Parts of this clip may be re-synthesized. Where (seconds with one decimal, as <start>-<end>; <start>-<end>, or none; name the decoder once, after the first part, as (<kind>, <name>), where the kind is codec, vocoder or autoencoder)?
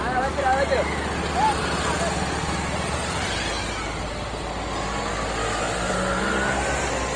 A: none